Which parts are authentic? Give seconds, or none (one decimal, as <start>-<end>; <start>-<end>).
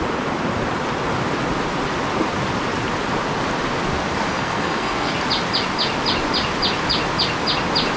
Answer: 0.0-4.3; 5.1-8.0